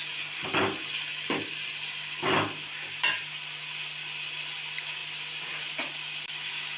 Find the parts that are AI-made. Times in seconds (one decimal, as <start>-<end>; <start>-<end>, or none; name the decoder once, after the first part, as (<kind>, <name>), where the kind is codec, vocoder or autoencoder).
none